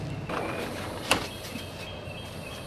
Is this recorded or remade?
recorded